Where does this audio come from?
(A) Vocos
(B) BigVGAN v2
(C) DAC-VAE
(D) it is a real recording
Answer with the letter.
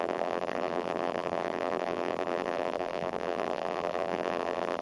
B